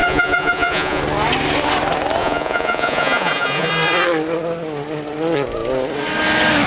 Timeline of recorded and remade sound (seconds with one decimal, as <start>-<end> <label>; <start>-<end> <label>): 0.0-1.0 remade; 1.0-2.2 recorded; 2.2-3.7 remade; 3.7-6.7 recorded